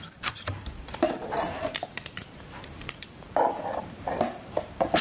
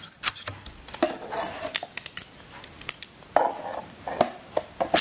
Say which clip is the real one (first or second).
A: second